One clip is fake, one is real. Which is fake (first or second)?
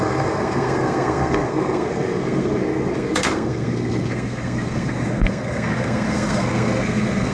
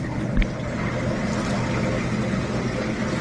first